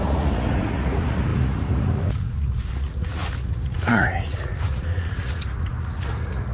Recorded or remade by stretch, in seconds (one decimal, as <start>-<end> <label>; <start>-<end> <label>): 0.0-6.5 remade

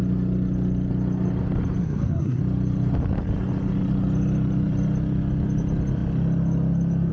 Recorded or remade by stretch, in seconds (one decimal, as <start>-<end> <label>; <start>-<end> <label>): 0.0-1.8 recorded; 1.8-2.4 remade; 2.4-7.1 recorded

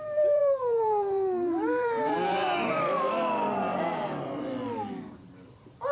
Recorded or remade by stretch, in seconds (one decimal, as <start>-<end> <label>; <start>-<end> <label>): 0.0-3.7 remade; 3.7-5.2 recorded; 5.2-5.9 remade

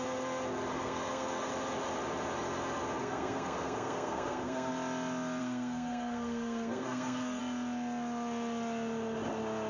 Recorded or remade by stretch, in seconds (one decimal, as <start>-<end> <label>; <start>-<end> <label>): 0.0-0.7 recorded; 0.7-1.5 remade; 1.5-3.0 recorded; 3.0-4.7 remade; 4.7-5.4 recorded; 5.4-7.4 remade; 7.4-9.7 recorded

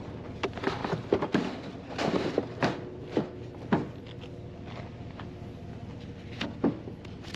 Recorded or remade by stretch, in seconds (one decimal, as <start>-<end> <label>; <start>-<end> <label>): 0.0-7.4 recorded